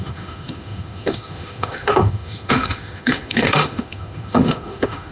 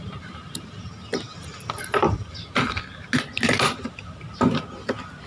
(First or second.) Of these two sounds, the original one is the second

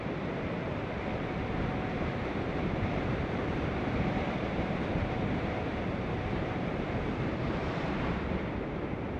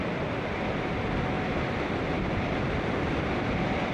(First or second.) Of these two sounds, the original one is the second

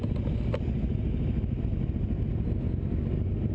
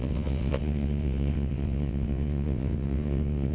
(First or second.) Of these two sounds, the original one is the first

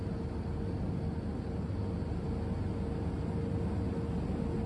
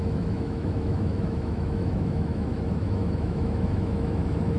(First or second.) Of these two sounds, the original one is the first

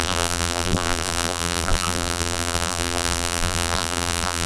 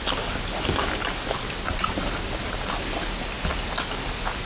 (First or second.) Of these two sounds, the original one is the second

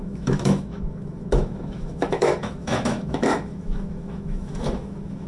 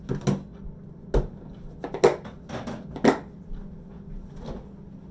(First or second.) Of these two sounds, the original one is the second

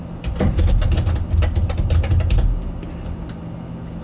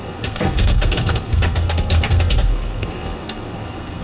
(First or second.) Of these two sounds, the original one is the first